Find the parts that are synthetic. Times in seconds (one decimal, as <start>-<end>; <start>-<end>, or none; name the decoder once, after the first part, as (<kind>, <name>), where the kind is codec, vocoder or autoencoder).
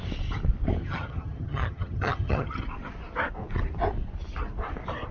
0.8-2.6 (vocoder, HiFi-GAN)